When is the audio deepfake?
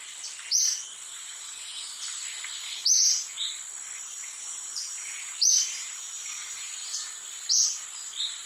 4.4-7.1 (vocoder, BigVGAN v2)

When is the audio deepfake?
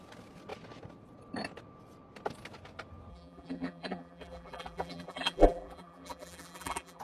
3.1-7.0 (vocoder, BigVGAN v2)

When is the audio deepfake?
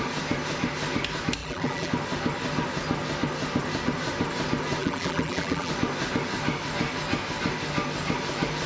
1.4-1.9 (vocoder, BigVGAN v2); 4.8-5.7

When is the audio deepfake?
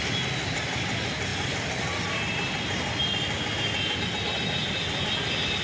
none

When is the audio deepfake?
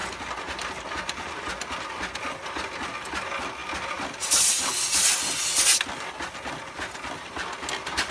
none